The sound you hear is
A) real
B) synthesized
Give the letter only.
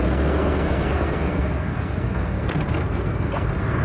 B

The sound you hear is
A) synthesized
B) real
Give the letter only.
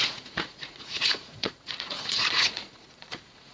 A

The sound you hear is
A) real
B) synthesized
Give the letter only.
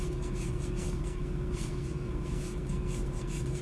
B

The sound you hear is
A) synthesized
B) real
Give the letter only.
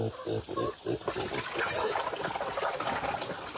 B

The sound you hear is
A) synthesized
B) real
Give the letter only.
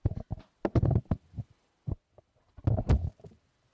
B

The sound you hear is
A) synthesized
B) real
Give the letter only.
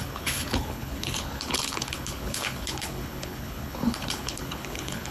A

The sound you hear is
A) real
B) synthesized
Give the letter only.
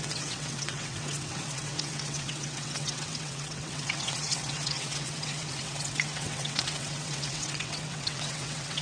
B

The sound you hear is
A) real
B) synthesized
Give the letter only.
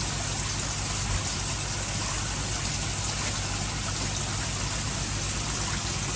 A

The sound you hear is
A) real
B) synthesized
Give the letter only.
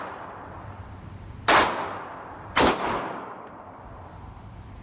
A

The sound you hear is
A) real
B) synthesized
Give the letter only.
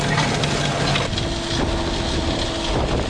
A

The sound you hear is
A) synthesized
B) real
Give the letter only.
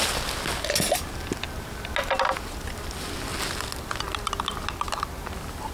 B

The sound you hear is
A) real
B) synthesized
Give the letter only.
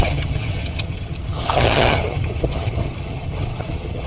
B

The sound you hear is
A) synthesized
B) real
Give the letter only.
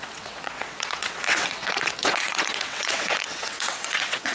A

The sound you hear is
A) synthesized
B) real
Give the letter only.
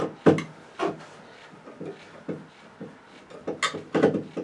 B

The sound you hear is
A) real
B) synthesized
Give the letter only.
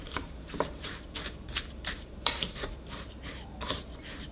B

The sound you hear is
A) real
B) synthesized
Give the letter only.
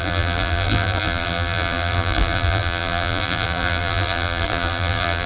B